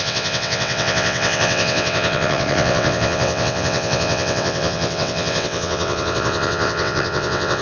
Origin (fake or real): fake